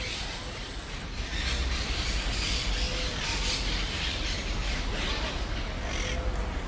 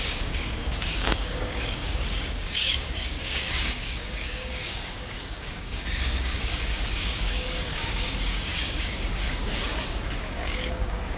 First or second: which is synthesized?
second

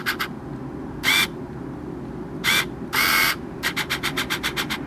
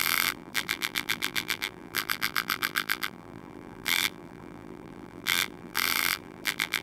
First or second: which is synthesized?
second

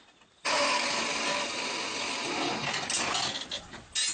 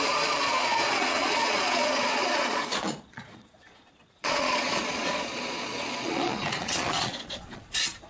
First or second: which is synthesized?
second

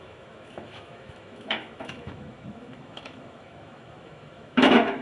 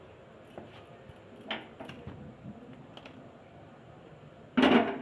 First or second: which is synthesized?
first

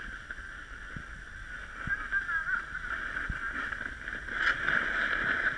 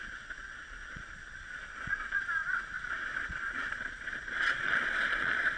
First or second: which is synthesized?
second